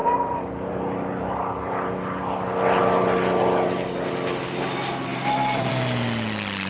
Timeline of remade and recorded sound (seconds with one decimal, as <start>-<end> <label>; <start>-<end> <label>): 0.0-1.2 remade; 1.2-5.1 recorded; 5.1-5.7 remade; 5.7-6.7 recorded